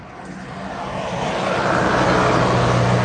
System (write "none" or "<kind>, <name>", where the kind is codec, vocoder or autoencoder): none